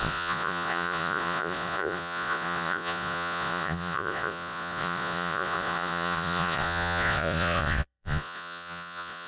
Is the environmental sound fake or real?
fake